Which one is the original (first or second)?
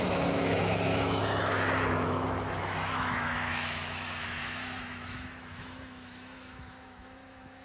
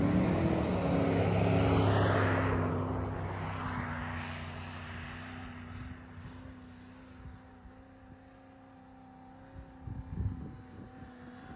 second